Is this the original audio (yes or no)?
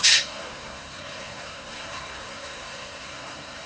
no